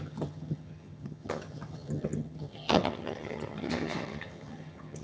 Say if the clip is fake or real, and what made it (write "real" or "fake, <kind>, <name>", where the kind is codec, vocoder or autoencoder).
fake, vocoder, HiFi-GAN